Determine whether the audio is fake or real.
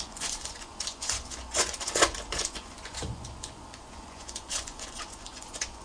fake